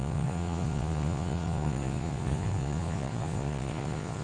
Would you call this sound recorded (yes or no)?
no